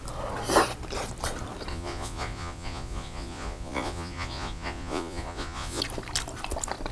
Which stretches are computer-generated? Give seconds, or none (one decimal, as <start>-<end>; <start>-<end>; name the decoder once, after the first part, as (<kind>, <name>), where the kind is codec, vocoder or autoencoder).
1.7-5.8 (vocoder, Vocos)